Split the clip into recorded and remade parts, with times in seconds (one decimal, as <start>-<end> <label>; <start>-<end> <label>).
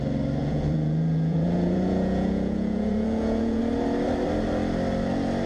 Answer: 0.0-0.4 recorded; 0.4-3.6 remade; 3.6-5.5 recorded